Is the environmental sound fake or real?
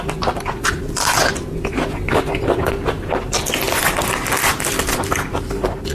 real